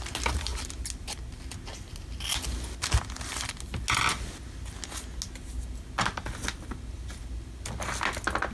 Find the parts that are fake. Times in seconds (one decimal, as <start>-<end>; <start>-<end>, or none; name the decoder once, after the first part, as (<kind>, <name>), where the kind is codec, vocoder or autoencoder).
none